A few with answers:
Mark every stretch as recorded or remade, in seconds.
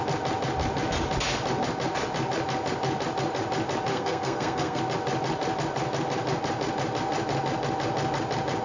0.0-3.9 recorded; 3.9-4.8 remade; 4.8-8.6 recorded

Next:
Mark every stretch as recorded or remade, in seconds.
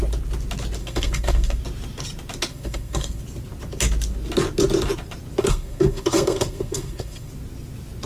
0.0-0.8 recorded; 0.8-1.6 remade; 1.6-2.5 recorded; 2.5-3.2 remade; 3.2-5.4 recorded; 5.4-7.3 remade; 7.3-8.1 recorded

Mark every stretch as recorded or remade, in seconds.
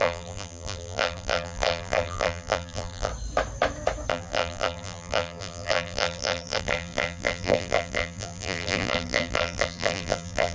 0.0-3.1 remade; 3.1-4.1 recorded; 4.1-10.5 remade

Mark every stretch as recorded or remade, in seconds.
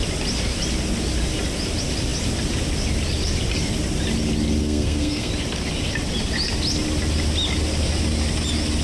0.0-4.6 recorded; 4.6-5.3 remade; 5.3-8.8 recorded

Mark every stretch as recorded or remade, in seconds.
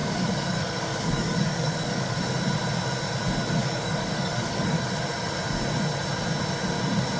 0.0-2.2 remade; 2.2-3.6 recorded; 3.6-4.9 remade; 4.9-7.2 recorded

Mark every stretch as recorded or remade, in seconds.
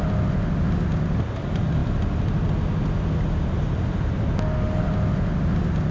0.0-5.9 recorded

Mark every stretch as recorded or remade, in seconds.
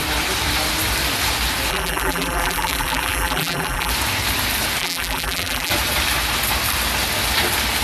0.0-1.7 recorded; 1.7-3.9 remade; 3.9-4.8 recorded; 4.8-5.7 remade; 5.7-7.8 recorded